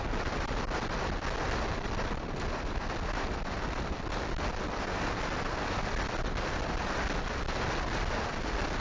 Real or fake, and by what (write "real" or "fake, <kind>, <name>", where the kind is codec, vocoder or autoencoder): real